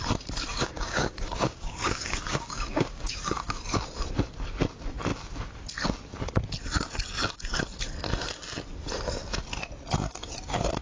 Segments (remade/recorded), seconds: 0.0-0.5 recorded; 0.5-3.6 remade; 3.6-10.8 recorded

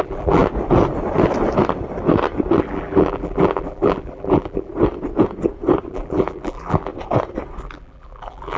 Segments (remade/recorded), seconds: 0.0-0.4 remade; 0.4-2.6 recorded; 2.6-4.7 remade; 4.7-5.9 recorded; 5.9-6.9 remade; 6.9-7.6 recorded; 7.6-8.6 remade

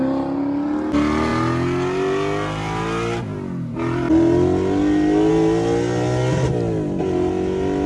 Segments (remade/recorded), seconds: 0.0-7.9 recorded

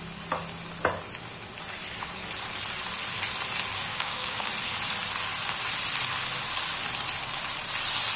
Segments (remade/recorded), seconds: 0.0-3.9 recorded; 3.9-4.5 remade; 4.5-8.2 recorded

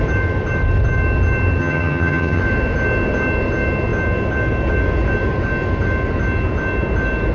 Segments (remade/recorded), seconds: 0.0-1.6 recorded; 1.6-2.4 remade; 2.4-7.3 recorded

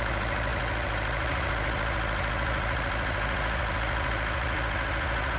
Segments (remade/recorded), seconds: 0.0-5.4 remade

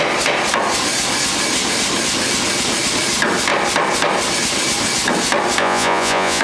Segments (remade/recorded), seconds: 0.0-5.6 recorded; 5.6-6.4 remade

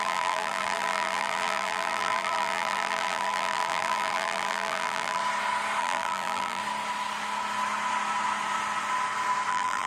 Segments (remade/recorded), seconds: 0.0-5.2 remade; 5.2-5.8 recorded; 5.8-6.6 remade; 6.6-9.5 recorded; 9.5-9.9 remade